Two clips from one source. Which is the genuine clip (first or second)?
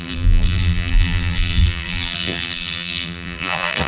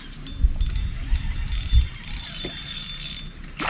second